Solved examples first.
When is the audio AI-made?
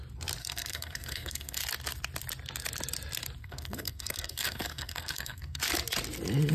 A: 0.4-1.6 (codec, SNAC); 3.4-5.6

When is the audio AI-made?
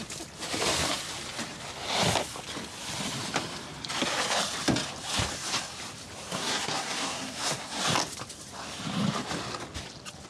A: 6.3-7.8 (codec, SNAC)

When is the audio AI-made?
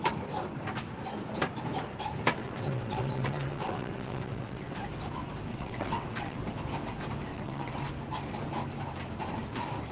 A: 2.4-4.8 (vocoder, WaveNeXt); 5.5-6.4; 7.3-7.9